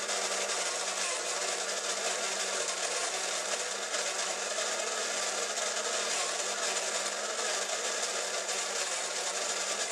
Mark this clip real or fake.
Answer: real